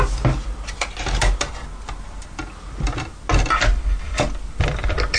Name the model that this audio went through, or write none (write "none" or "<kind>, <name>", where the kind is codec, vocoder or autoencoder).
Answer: none